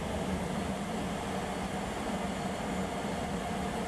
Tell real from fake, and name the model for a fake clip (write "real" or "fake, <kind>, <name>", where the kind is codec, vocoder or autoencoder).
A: real